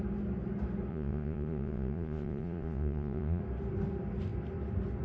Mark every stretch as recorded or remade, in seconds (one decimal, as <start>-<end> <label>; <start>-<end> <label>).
0.0-0.9 recorded; 0.9-3.4 remade; 3.4-5.0 recorded